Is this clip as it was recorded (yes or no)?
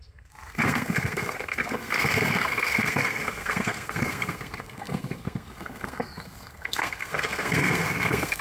no